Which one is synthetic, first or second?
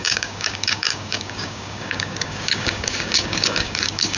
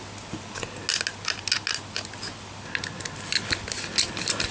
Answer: first